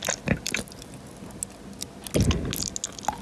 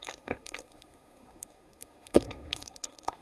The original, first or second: first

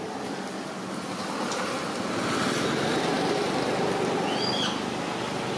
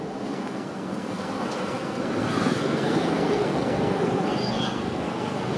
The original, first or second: first